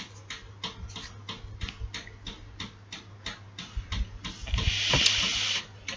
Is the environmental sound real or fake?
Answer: real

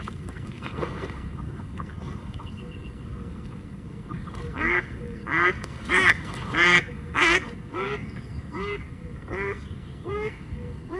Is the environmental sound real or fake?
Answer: fake